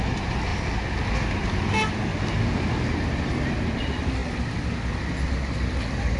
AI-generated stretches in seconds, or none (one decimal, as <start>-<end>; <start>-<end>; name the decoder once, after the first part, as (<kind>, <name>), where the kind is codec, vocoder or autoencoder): none